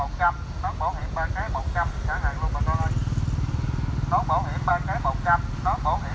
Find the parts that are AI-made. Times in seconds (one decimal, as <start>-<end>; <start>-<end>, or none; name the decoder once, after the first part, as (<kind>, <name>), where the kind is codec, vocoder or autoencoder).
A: none